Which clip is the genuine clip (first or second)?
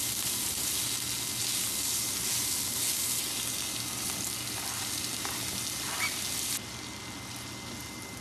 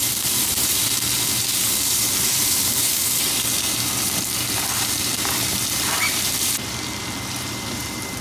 first